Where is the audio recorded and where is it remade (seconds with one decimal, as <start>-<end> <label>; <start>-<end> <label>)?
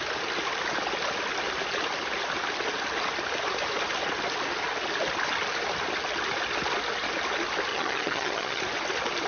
0.0-7.7 recorded; 7.7-8.6 remade; 8.6-9.3 recorded